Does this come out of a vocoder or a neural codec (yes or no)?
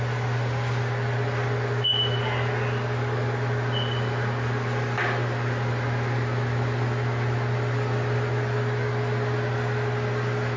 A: no